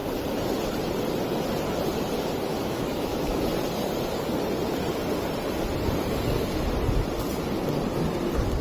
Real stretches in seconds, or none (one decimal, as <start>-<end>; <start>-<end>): 0.0-2.5; 3.4-8.6